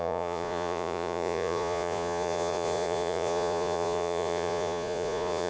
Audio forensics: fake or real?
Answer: fake